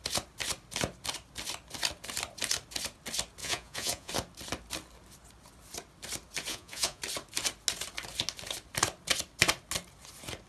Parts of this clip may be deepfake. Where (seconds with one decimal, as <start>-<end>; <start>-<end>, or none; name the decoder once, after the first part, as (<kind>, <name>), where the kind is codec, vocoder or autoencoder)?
3.4-4.1 (vocoder, Vocos); 6.5-7.0